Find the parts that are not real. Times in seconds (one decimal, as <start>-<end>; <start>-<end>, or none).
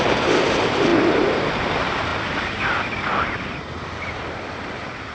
0.9-1.5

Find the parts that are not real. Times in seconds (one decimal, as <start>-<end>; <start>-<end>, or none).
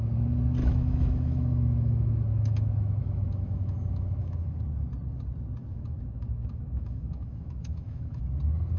0.6-4.6; 5.7-8.2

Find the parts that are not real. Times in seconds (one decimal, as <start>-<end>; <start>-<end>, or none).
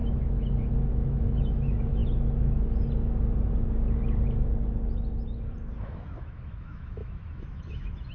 0.9-2.0; 5.8-8.1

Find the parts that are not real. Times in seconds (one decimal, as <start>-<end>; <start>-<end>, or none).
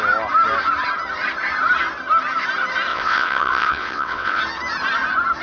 2.9-4.4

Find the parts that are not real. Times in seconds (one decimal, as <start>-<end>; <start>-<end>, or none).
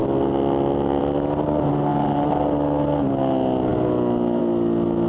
none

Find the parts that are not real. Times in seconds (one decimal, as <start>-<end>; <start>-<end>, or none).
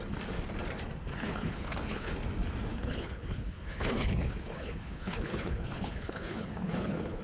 1.1-2.1; 2.7-7.2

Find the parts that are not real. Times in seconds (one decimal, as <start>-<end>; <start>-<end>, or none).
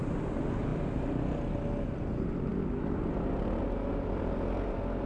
none